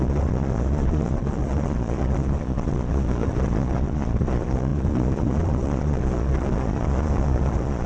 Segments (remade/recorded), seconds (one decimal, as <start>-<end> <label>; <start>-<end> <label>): 0.0-7.9 remade